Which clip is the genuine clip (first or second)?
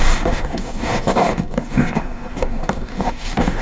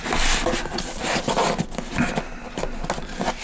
second